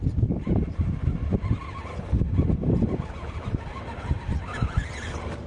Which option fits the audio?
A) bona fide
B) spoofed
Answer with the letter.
A